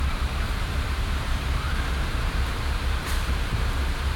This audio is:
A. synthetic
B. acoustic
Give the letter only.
A